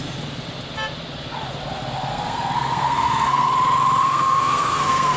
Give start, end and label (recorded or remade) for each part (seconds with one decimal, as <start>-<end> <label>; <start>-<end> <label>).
0.0-2.1 recorded; 2.1-3.5 remade; 3.5-4.0 recorded; 4.0-5.2 remade